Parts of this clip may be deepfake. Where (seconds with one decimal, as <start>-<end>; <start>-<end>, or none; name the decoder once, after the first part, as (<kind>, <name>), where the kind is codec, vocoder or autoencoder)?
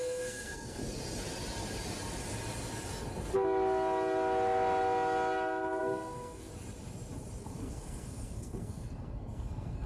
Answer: 0.0-0.8 (codec, SNAC); 5.8-6.5; 7.4-9.9